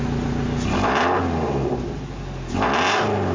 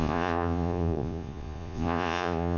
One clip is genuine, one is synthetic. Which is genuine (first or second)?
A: first